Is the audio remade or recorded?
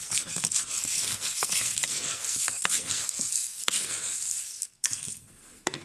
remade